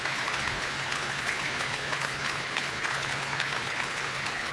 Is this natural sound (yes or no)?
no